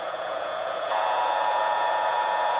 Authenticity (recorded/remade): remade